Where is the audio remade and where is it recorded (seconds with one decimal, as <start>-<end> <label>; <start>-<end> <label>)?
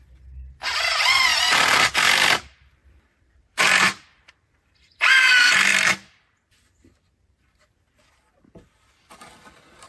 0.0-5.7 remade; 5.7-9.9 recorded